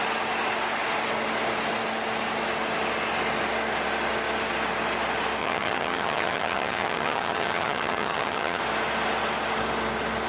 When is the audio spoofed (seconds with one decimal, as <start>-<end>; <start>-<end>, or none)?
5.4-8.6